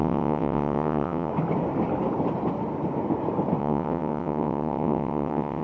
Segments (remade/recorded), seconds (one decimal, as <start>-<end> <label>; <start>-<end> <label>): 0.0-1.3 remade; 1.3-3.6 recorded; 3.6-5.6 remade